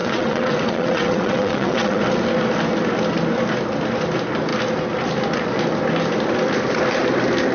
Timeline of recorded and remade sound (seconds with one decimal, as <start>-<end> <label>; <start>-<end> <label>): 0.0-2.0 remade; 2.0-7.5 recorded

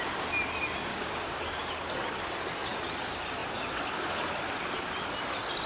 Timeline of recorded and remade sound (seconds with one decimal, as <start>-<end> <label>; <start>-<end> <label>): 0.0-0.9 recorded; 0.9-1.7 remade; 1.7-5.7 recorded